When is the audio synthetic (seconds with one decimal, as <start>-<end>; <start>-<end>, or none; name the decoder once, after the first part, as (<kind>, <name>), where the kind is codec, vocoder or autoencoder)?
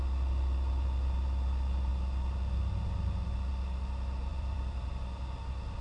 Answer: 4.3-4.9 (vocoder, BigVGAN v2)